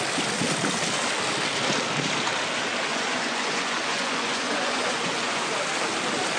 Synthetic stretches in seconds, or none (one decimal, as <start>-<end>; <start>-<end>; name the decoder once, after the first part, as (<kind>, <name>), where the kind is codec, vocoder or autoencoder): 2.9-5.5 (vocoder, Vocos)